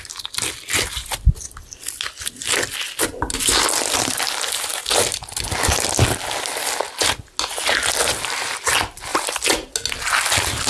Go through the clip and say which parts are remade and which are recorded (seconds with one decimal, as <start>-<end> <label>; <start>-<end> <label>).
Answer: 0.0-10.7 recorded

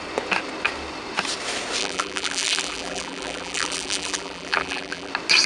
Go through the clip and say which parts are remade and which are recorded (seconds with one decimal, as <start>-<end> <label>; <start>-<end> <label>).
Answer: 0.0-1.8 recorded; 1.8-5.1 remade; 5.1-5.5 recorded

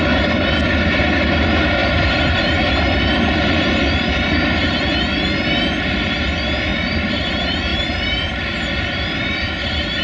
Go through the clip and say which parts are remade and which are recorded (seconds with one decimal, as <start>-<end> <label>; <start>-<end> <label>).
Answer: 0.0-6.7 recorded; 6.7-7.3 remade; 7.3-7.7 recorded; 7.7-8.4 remade; 8.4-10.0 recorded

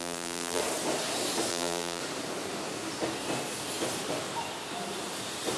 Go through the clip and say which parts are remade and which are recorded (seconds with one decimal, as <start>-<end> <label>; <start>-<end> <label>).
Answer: 0.0-0.6 remade; 0.6-1.5 recorded; 1.5-2.0 remade; 2.0-5.6 recorded

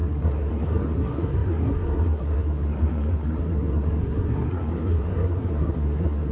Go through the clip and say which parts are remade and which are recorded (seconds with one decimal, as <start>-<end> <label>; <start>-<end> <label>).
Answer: 0.0-6.3 remade

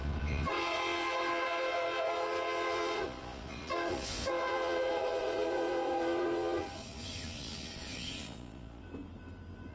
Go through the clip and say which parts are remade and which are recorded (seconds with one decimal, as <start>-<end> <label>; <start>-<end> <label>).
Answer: 0.0-8.8 remade; 8.8-9.7 recorded

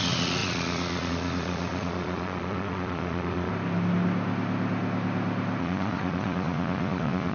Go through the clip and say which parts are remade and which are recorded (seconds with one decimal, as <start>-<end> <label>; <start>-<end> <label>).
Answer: 0.0-3.5 remade; 3.5-5.6 recorded; 5.6-7.3 remade

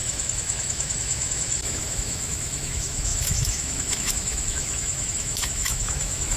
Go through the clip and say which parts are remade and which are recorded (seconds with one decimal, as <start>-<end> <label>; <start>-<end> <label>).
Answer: 0.0-6.4 remade